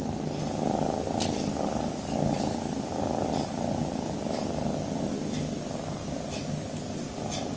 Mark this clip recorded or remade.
recorded